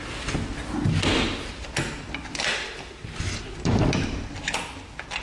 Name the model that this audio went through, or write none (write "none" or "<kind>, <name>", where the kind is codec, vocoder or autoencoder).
none